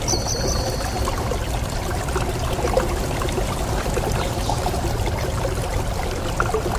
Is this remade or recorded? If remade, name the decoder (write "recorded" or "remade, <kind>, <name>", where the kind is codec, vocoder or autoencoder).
recorded